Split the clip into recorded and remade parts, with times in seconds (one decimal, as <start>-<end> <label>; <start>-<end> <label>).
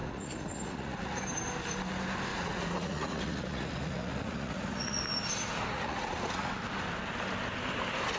0.0-1.2 remade; 1.2-2.3 recorded; 2.3-5.0 remade; 5.0-5.7 recorded; 5.7-6.5 remade; 6.5-8.2 recorded